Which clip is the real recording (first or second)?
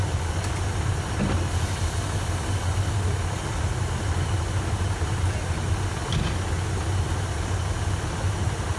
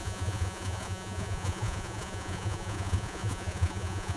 first